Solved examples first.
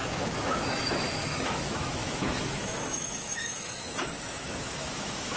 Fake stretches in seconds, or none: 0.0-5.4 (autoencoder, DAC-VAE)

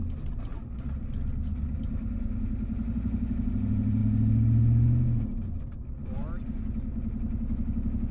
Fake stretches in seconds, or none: none

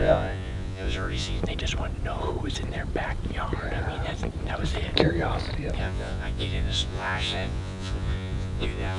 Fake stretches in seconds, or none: 0.0-1.4 (vocoder, Vocos); 5.8-9.0

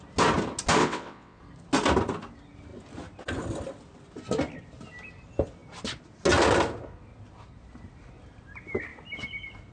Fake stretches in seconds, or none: 0.8-1.4 (vocoder, WaveNeXt)

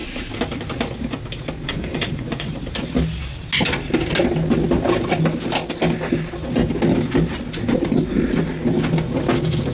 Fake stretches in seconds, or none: 1.7-2.5 (vocoder, Vocos)